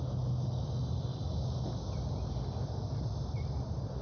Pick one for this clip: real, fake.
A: real